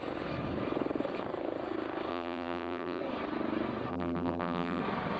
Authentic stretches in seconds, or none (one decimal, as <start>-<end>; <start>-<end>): 0.0-2.1; 3.0-3.9; 4.8-5.2

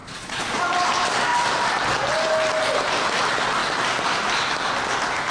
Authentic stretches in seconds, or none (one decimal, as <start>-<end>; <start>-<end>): 0.6-5.3

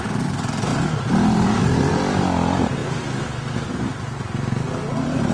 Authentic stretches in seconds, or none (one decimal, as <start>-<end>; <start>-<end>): 0.0-5.3